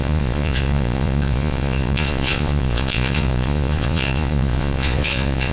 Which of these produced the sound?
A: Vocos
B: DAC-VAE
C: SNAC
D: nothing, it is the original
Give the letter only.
A